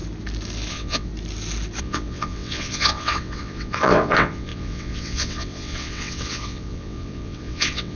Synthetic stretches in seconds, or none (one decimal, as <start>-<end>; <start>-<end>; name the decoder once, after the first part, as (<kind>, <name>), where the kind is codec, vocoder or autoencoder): 0.7-1.1 (vocoder, WaveNeXt); 1.8-8.0